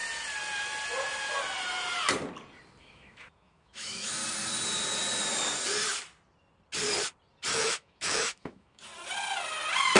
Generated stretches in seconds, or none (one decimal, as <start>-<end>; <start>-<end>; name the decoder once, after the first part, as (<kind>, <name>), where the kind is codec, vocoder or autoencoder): 2.8-4.2 (autoencoder, DAC-VAE); 7.5-8.9